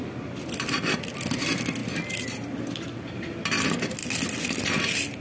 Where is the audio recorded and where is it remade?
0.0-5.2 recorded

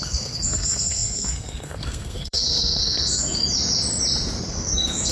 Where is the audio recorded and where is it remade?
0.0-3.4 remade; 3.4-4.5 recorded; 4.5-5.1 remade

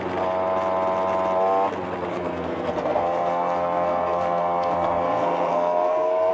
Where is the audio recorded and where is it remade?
0.0-2.1 recorded; 2.1-6.3 remade

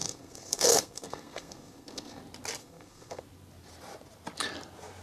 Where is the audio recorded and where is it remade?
0.0-2.2 remade; 2.2-2.6 recorded; 2.6-3.2 remade; 3.2-5.0 recorded

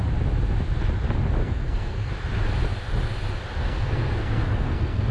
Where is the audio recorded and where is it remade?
0.0-1.4 recorded; 1.4-2.1 remade; 2.1-3.6 recorded; 3.6-5.1 remade